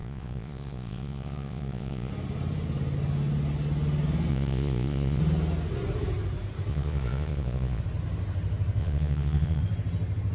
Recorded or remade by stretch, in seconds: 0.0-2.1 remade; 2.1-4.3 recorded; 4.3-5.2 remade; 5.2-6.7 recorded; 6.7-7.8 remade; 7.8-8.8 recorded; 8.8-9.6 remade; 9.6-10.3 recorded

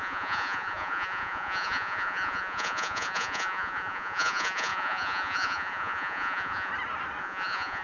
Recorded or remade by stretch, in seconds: 0.0-6.7 remade; 6.7-7.2 recorded; 7.2-7.8 remade

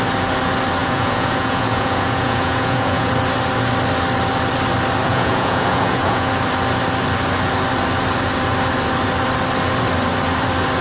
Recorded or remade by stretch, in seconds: 0.0-0.8 recorded; 0.8-3.1 remade; 3.1-5.1 recorded; 5.1-6.3 remade; 6.3-10.8 recorded